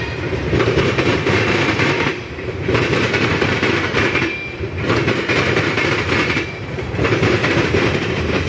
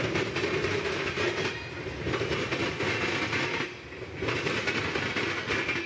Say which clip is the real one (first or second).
second